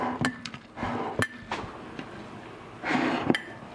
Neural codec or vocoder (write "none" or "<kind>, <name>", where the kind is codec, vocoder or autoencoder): none